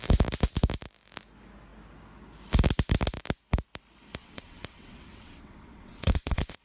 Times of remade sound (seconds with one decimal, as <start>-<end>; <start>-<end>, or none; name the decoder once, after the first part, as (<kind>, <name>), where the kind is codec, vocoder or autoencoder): 4.2-6.6 (vocoder, WaveNeXt)